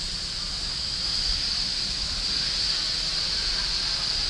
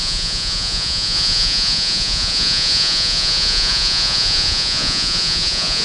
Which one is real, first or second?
first